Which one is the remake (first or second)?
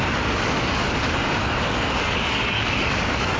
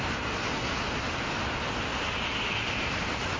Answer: first